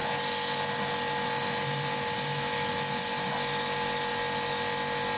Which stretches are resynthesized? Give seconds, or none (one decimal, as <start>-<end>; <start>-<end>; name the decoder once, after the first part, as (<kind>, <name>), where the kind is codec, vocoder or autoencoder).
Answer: none